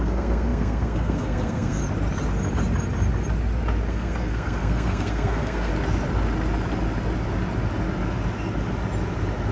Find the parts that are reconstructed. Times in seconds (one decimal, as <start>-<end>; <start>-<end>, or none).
0.0-1.8; 3.9-5.7